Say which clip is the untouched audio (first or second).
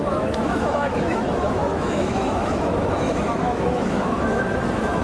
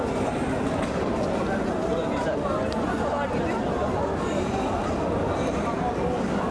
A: second